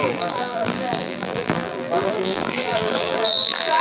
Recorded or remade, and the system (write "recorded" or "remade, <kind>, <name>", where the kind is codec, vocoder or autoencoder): remade, vocoder, BigVGAN v2